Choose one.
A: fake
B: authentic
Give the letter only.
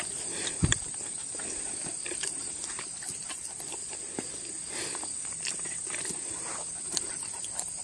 B